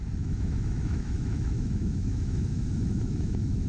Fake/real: fake